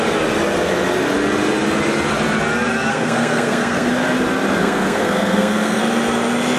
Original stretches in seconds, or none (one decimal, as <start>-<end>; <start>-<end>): 0.0-2.9; 3.9-4.6; 5.8-6.6

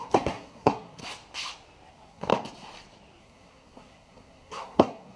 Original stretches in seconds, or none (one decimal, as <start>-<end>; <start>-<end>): 1.0-1.9; 2.3-3.2